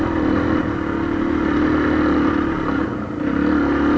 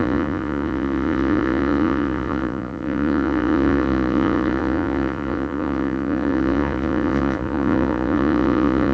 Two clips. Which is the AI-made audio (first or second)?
second